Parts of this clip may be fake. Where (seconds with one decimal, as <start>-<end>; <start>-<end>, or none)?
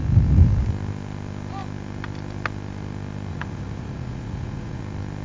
3.3-4.8